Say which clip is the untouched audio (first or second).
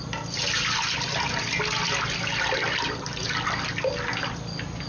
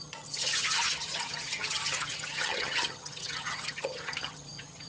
first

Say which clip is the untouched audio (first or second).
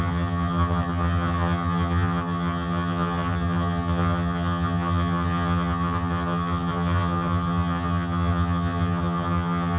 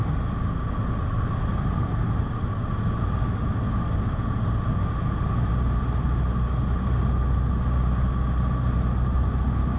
second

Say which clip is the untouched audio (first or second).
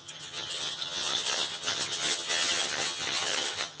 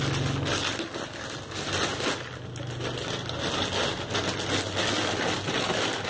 second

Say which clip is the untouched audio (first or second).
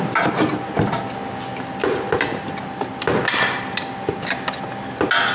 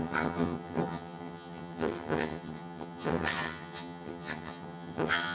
first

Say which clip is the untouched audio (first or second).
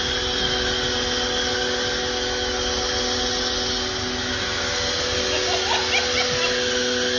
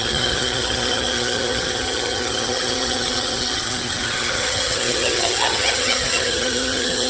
first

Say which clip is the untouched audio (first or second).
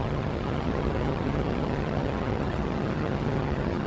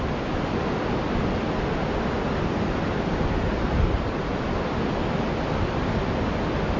second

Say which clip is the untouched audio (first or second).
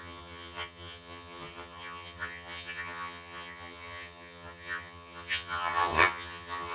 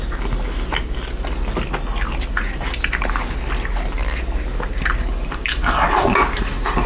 second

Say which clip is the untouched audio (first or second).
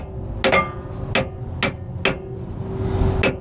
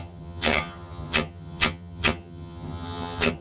first